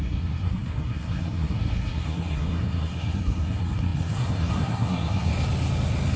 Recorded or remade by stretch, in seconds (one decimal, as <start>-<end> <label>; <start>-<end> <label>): 0.0-5.3 remade; 5.3-6.2 recorded